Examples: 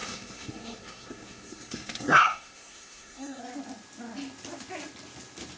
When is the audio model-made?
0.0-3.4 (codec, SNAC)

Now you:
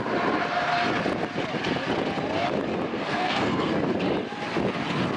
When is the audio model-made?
2.9-3.7 (codec, SNAC)

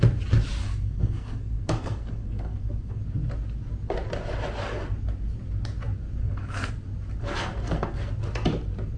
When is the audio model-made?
0.6-3.0 (codec, SNAC); 6.2-6.7; 7.2-8.1

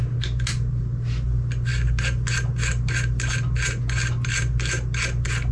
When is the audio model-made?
none

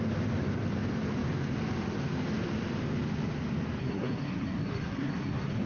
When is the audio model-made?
3.8-5.7 (codec, SNAC)

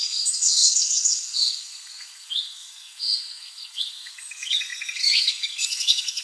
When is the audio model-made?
0.0-6.2 (codec, SNAC)

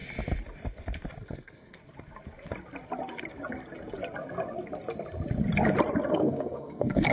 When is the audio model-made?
1.2-1.8 (codec, SNAC); 6.1-7.1